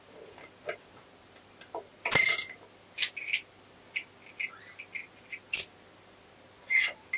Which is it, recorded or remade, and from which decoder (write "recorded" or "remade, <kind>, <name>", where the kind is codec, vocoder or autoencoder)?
recorded